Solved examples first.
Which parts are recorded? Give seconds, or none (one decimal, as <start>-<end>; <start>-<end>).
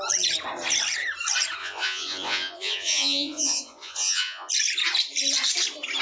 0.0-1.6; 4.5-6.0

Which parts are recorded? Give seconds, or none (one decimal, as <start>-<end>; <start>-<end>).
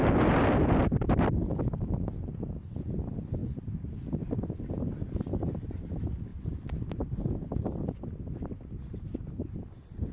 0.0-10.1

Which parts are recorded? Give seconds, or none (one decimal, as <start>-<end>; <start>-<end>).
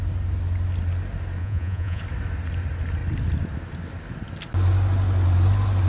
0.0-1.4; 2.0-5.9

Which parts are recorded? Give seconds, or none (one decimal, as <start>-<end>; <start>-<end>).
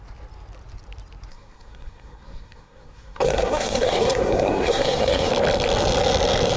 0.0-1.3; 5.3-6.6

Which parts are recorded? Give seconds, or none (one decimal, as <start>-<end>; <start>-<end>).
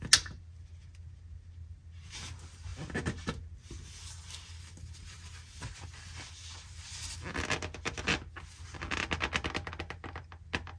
0.0-10.8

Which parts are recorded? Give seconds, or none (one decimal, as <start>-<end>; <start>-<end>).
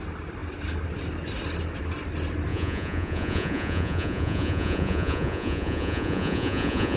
0.0-2.5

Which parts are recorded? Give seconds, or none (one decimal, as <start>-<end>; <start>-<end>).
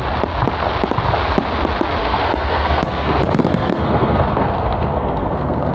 0.0-2.0